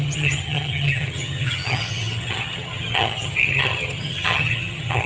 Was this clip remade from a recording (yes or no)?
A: yes